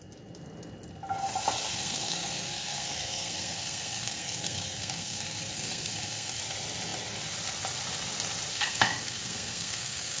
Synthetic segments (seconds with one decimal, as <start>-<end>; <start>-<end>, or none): 1.7-6.4; 8.5-10.2